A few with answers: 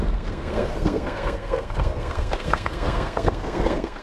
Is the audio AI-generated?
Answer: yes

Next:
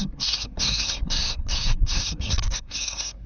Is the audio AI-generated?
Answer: yes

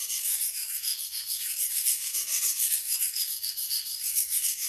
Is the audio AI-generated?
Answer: yes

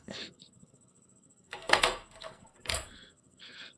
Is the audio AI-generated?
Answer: yes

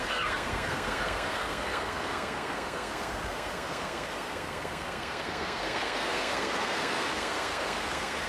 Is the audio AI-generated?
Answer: yes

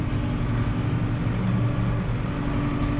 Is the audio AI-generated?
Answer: no